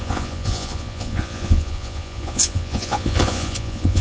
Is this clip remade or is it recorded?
remade